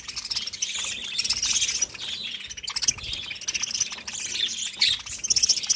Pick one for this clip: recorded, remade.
recorded